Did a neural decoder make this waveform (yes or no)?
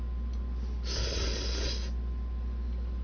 no